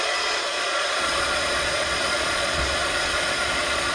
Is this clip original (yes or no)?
no